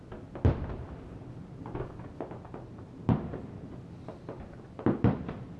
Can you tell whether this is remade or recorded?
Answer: recorded